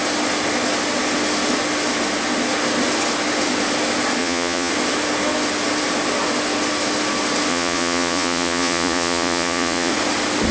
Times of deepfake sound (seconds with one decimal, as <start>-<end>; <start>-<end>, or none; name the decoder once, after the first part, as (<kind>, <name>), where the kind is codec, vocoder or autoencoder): 4.2-4.7 (vocoder, Vocos); 7.5-9.9